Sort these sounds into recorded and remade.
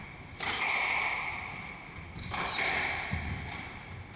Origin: recorded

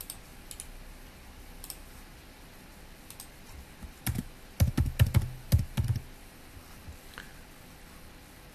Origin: recorded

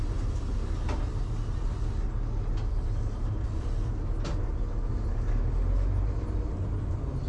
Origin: recorded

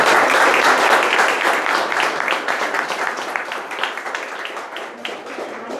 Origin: remade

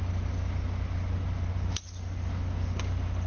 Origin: recorded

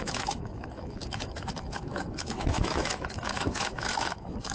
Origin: remade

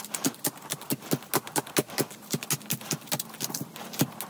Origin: recorded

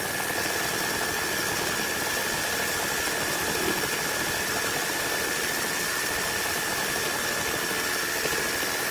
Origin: recorded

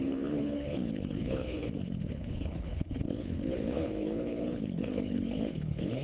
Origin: remade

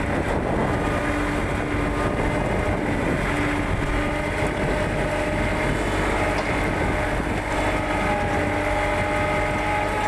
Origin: recorded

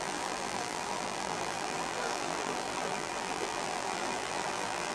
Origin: remade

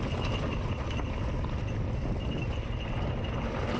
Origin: recorded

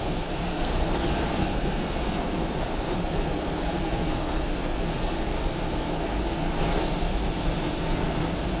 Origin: remade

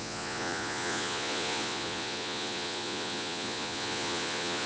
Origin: remade